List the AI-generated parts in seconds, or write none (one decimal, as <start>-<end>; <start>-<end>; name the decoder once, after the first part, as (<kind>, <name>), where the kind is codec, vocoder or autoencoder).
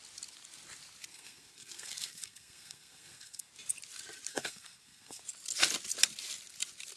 1.1-3.5 (codec, SNAC); 4.3-5.2